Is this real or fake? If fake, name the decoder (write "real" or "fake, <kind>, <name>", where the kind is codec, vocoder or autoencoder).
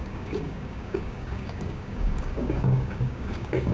fake, codec, DAC